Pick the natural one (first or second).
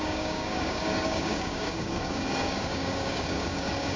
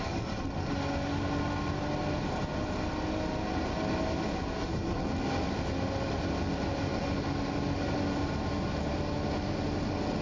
second